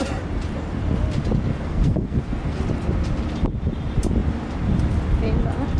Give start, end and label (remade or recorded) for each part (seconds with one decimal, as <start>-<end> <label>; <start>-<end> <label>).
0.0-1.5 recorded; 1.5-2.6 remade; 2.6-5.8 recorded